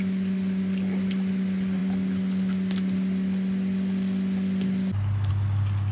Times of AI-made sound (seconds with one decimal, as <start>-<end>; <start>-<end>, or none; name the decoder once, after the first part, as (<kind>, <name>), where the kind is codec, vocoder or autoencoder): none